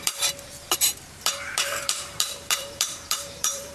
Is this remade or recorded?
remade